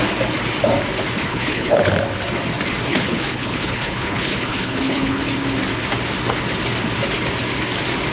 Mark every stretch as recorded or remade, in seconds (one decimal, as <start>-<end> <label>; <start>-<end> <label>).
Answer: 0.0-1.2 recorded; 1.2-1.9 remade; 1.9-2.9 recorded; 2.9-5.2 remade; 5.2-8.1 recorded

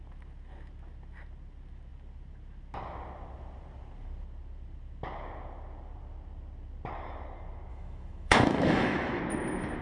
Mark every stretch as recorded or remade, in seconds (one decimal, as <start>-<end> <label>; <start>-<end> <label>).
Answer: 0.0-7.7 recorded; 7.7-9.2 remade; 9.2-9.8 recorded